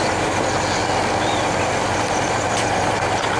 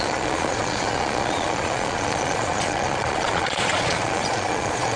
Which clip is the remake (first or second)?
second